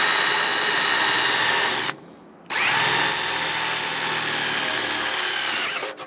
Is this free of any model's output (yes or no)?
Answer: yes